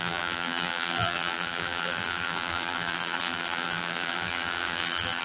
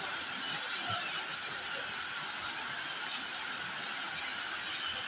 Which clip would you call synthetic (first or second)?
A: first